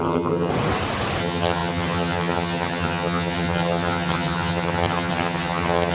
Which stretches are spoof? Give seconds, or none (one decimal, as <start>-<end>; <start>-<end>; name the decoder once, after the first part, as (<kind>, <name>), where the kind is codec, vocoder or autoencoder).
0.0-0.5 (vocoder, HiFi-GAN); 1.2-5.9